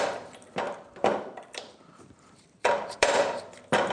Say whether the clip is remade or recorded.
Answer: remade